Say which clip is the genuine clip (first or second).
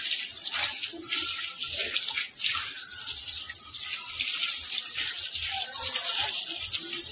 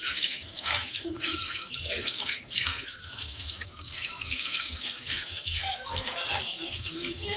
first